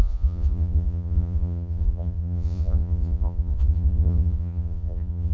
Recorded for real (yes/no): no